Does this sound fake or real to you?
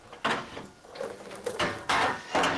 fake